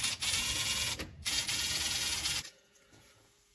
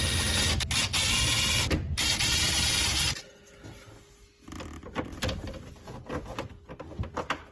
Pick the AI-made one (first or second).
first